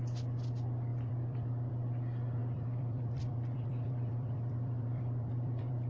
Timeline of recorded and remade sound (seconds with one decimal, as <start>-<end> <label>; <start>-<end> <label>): 0.0-0.9 recorded; 0.9-1.7 remade; 1.7-2.4 recorded; 2.4-5.9 remade